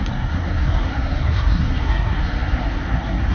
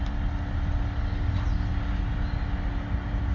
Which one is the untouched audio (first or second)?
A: second